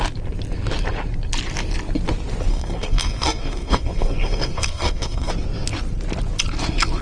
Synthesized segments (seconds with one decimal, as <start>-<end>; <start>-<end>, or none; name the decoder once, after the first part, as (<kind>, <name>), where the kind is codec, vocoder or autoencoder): 2.5-5.3 (codec, SNAC)